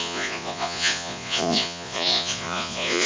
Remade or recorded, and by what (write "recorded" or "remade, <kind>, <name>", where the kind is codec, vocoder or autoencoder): remade, vocoder, Vocos